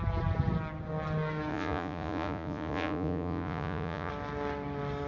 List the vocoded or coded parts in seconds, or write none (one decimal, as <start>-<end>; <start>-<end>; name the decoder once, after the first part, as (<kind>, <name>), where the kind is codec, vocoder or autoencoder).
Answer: 1.5-4.1 (vocoder, Vocos)